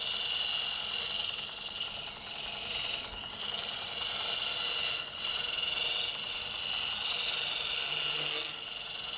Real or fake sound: real